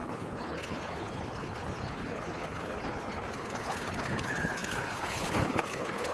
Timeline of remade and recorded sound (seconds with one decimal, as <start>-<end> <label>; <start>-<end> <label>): 0.0-6.1 remade